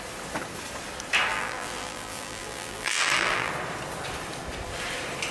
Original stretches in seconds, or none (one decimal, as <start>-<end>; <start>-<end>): 0.0-1.3; 3.5-5.3